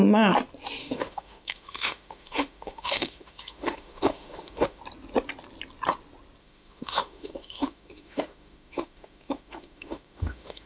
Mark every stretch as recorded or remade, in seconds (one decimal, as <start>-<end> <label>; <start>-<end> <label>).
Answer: 0.0-0.8 recorded; 0.8-4.8 remade; 4.8-6.4 recorded; 6.4-10.7 remade